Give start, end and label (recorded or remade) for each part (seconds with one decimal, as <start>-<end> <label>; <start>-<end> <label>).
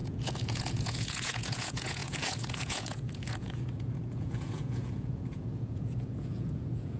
0.0-7.0 remade